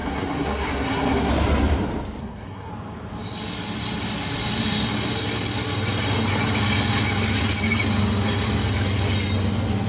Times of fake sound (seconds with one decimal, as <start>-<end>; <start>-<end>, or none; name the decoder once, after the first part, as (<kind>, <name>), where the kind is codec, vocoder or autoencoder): 0.0-1.3 (codec, SNAC); 2.2-2.7